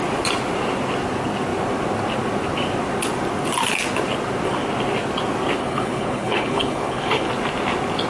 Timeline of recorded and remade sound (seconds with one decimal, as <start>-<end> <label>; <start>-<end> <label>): 0.0-5.6 recorded; 5.6-7.3 remade; 7.3-8.1 recorded